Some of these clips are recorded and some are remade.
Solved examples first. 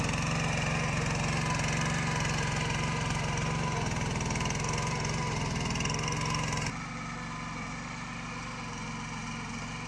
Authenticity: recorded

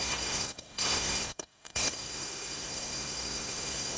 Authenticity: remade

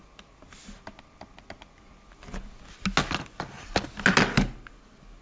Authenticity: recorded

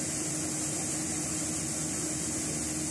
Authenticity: recorded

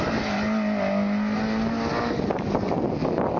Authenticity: recorded